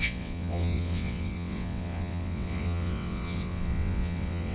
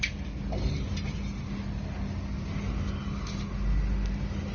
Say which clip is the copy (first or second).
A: first